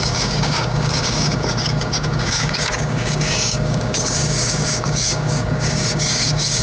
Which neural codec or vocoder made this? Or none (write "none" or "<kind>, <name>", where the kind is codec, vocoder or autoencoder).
codec, DAC